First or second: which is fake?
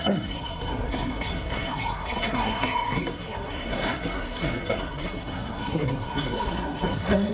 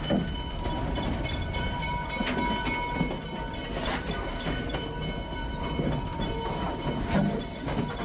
first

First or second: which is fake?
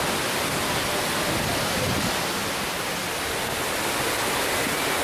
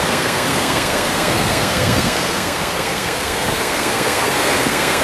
second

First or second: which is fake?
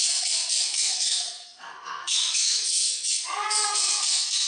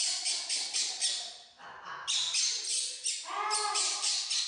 first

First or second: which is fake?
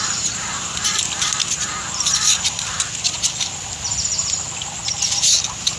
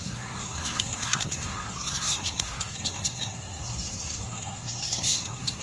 second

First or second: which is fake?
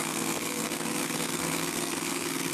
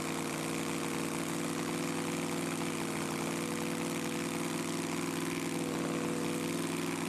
first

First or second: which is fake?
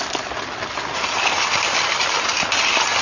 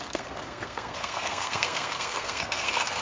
second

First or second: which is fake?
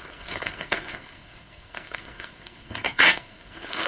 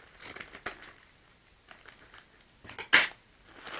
first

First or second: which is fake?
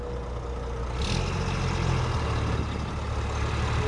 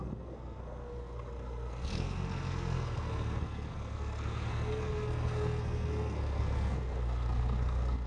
second